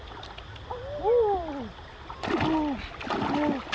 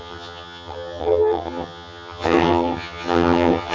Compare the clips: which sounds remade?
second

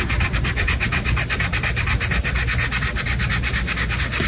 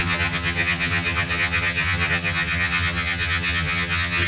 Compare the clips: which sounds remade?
second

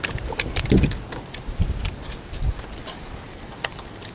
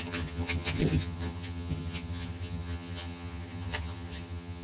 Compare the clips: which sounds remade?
second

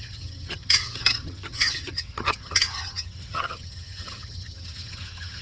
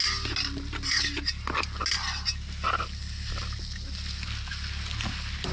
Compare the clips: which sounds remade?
first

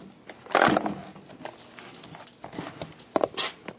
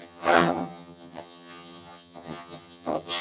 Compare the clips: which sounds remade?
second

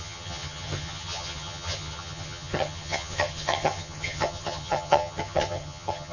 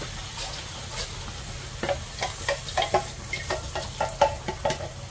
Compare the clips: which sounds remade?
first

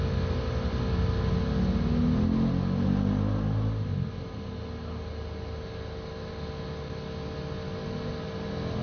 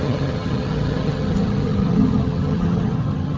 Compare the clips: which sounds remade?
second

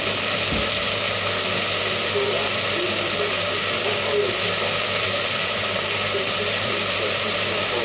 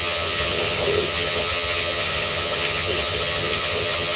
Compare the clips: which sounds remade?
second